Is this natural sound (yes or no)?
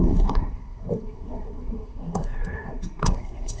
no